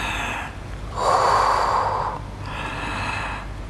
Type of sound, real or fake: real